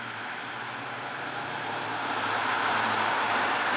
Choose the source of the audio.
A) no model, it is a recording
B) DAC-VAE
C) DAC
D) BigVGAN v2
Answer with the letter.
D